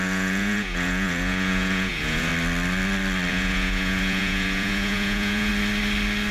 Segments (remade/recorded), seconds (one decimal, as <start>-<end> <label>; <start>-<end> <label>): 0.0-2.3 remade; 2.3-3.3 recorded; 3.3-5.5 remade; 5.5-6.3 recorded